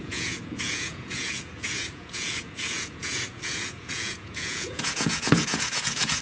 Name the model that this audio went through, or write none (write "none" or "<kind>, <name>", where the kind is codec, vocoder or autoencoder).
vocoder, Vocos